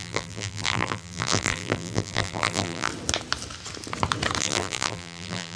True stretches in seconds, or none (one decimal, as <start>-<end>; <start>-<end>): 2.9-4.4